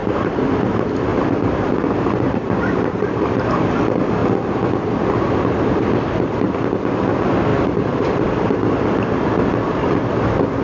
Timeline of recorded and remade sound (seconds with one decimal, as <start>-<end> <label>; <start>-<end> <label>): 0.0-0.5 remade; 0.5-1.1 recorded; 1.1-3.5 remade; 3.5-7.5 recorded; 7.5-8.3 remade; 8.3-10.6 recorded